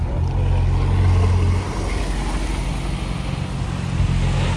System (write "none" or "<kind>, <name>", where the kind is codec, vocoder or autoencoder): none